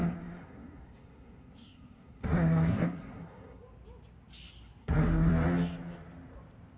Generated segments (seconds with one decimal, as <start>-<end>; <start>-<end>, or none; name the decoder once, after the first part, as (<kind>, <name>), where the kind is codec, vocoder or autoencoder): 0.0-3.6 (codec, SNAC); 4.8-5.3